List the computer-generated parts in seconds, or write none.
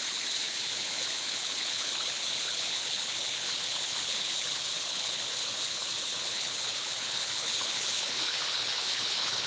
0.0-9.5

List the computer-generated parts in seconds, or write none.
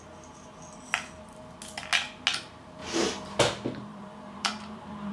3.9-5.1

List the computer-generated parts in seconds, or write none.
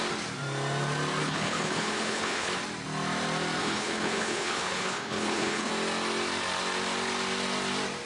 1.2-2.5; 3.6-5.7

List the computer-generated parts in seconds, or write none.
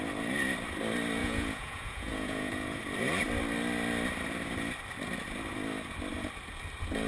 1.2-2.8